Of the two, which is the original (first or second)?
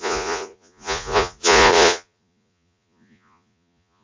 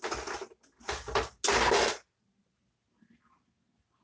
second